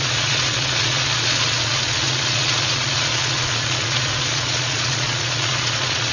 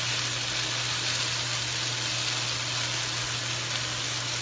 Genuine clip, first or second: second